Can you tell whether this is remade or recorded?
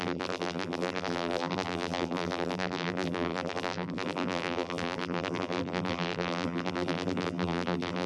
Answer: remade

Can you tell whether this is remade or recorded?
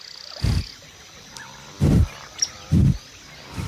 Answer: recorded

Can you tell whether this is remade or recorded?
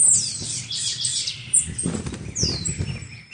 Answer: remade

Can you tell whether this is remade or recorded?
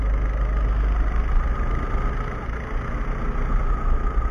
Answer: recorded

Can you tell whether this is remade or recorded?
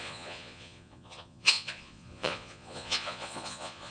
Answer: remade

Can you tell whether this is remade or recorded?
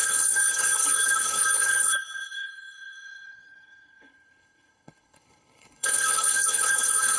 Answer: remade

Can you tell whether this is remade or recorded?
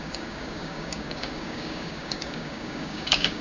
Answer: remade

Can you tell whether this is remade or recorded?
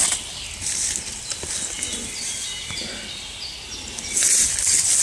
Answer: recorded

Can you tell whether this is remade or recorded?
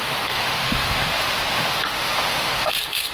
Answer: remade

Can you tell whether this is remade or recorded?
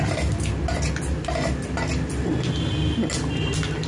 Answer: recorded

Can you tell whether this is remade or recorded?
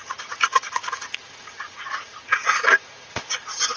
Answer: remade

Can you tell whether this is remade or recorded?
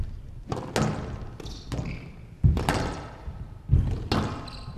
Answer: recorded